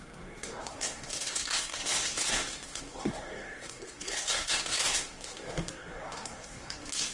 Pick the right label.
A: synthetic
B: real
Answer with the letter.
A